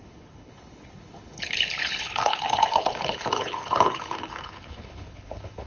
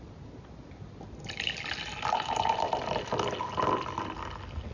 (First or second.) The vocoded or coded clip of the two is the first